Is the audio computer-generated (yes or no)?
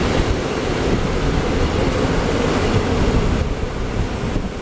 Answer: no